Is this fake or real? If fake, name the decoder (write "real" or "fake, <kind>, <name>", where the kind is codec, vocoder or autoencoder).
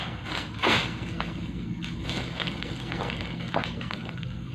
fake, codec, SNAC